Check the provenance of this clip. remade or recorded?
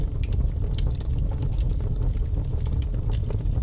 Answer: recorded